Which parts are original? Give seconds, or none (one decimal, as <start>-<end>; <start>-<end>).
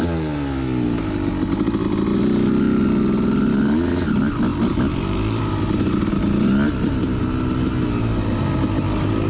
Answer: 0.0-9.3